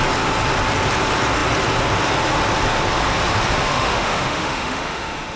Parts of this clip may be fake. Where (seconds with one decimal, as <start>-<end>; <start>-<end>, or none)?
3.7-5.4